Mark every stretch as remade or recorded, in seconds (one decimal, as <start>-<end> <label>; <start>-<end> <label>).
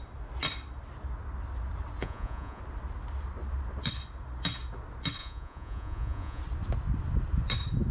0.0-2.0 recorded; 2.0-2.6 remade; 2.6-5.2 recorded; 5.2-6.4 remade; 6.4-7.9 recorded